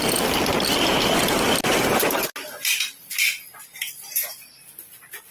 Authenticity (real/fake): real